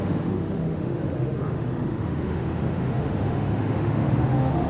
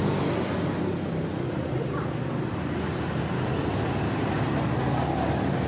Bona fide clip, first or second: second